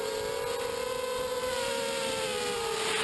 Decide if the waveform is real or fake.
real